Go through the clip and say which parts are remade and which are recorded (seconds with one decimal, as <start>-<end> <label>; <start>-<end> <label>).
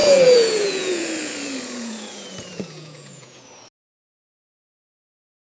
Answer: 0.0-3.4 remade; 3.4-5.6 recorded